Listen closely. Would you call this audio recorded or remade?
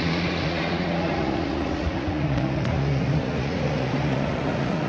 remade